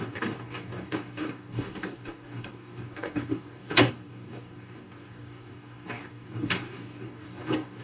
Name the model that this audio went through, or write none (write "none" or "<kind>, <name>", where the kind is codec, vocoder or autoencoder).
codec, DAC